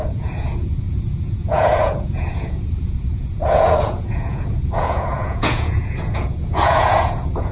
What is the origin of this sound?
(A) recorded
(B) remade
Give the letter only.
B